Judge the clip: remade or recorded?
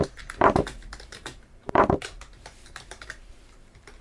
remade